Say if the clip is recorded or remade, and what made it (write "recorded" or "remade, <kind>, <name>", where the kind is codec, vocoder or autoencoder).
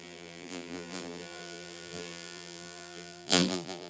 remade, vocoder, BigVGAN v2